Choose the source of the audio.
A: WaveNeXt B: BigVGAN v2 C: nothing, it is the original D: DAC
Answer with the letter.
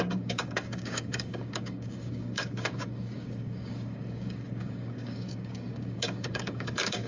D